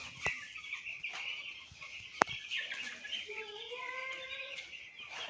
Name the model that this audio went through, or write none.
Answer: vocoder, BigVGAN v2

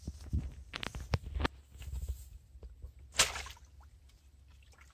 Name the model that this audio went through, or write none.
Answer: none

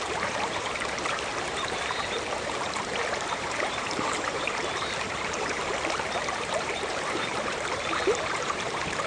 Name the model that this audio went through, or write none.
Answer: vocoder, BigVGAN v2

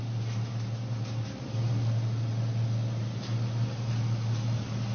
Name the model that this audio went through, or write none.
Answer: none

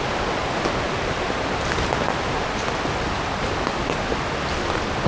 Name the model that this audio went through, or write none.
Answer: none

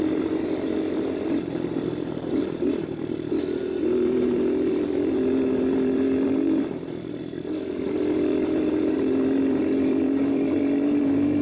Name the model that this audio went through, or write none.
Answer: vocoder, BigVGAN v2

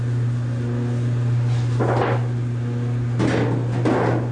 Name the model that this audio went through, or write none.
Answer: none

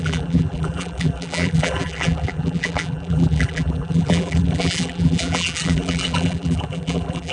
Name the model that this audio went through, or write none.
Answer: vocoder, BigVGAN v2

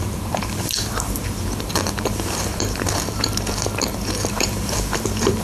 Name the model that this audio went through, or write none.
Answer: vocoder, BigVGAN v2